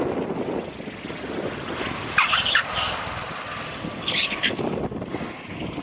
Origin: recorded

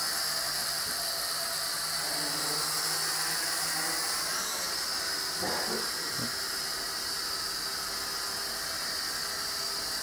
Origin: recorded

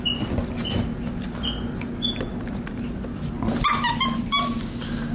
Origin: recorded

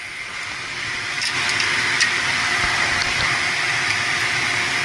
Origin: recorded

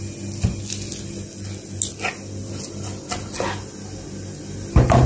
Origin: recorded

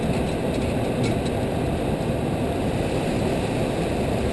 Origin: recorded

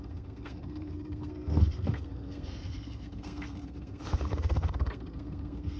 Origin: remade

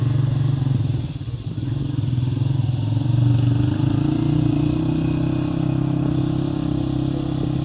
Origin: recorded